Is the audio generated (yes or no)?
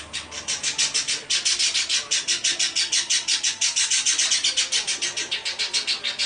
no